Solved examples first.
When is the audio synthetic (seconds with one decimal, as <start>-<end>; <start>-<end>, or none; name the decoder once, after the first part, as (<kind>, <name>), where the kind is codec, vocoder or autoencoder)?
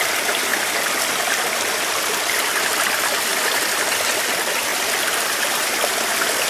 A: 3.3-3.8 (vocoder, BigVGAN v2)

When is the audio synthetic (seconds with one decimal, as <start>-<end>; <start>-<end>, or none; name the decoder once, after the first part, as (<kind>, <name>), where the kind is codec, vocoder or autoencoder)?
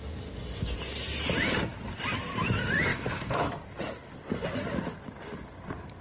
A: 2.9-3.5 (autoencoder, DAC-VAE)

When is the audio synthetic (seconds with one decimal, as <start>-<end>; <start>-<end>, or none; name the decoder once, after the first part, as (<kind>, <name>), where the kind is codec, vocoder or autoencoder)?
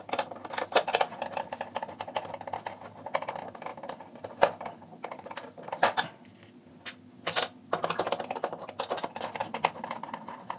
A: 9.4-9.9 (vocoder, BigVGAN v2)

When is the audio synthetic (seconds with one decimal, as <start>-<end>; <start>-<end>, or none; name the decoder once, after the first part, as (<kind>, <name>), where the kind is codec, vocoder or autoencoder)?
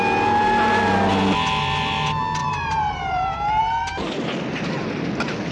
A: 2.4-3.6 (vocoder, BigVGAN v2)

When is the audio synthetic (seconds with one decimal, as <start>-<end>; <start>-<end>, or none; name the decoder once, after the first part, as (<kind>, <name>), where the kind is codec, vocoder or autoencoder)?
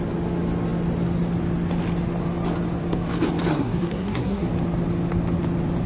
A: 3.5-4.5 (codec, SNAC)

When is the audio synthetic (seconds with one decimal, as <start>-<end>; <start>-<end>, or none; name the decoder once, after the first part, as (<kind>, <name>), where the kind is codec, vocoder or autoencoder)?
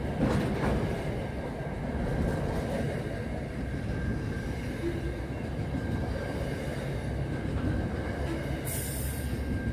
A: none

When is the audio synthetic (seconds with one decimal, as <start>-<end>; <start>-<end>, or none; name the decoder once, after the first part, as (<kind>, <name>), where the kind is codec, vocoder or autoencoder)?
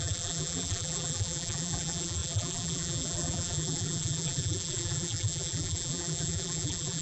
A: 0.0-7.0 (vocoder, BigVGAN v2)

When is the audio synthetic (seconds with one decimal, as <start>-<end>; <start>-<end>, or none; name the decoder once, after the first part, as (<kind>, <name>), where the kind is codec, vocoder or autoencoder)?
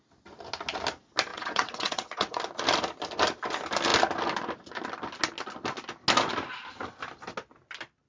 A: 1.3-2.4 (vocoder, WaveNeXt)